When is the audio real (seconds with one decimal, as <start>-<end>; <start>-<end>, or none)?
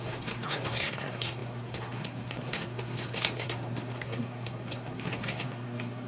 none